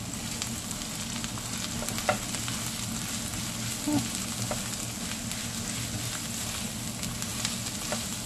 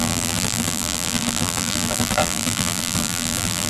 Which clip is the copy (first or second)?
second